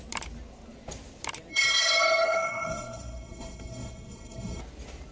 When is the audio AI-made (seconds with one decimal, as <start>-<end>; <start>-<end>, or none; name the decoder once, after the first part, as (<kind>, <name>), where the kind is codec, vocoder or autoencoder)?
1.5-4.6 (codec, SNAC)